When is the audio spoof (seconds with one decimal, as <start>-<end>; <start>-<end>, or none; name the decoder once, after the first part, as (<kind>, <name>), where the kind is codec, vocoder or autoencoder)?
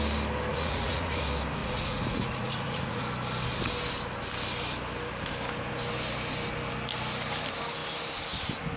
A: 0.5-1.2 (vocoder, Vocos); 1.6-3.0